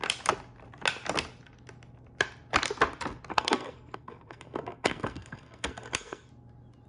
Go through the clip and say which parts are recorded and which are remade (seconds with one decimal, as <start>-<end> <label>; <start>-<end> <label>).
0.0-3.3 recorded; 3.3-6.3 remade; 6.3-6.9 recorded